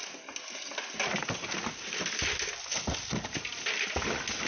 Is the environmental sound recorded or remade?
recorded